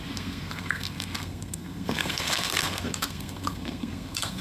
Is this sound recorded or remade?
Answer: remade